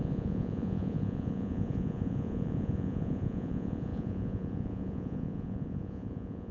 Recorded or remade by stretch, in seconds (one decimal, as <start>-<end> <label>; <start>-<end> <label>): 0.0-6.5 remade